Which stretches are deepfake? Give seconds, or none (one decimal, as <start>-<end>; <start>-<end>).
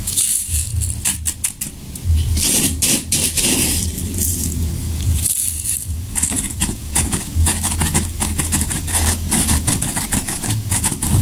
0.0-0.7; 4.4-11.2